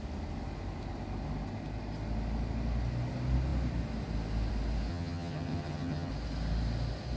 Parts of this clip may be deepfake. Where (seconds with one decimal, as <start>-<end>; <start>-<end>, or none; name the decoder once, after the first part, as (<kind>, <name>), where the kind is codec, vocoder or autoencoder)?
4.9-6.1 (vocoder, HiFi-GAN)